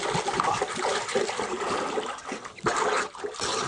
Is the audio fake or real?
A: real